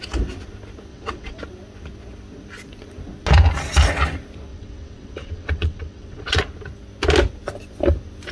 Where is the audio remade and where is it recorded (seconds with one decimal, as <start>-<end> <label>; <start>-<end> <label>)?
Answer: 0.0-0.9 recorded; 0.9-1.4 remade; 1.4-4.5 recorded; 4.5-6.4 remade; 6.4-8.3 recorded